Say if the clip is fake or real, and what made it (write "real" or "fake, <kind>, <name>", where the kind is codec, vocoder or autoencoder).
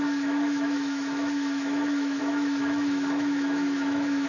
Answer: fake, autoencoder, DAC-VAE